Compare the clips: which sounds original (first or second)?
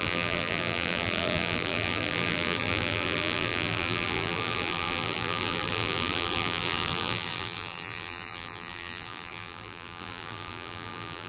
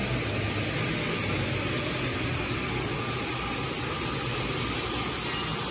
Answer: second